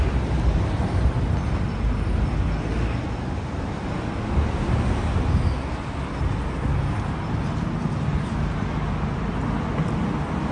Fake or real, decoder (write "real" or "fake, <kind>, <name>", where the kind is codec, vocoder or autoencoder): real